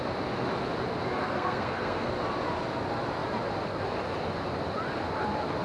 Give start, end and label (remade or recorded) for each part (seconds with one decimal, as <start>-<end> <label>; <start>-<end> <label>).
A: 0.0-1.2 recorded; 1.2-2.1 remade; 2.1-5.6 recorded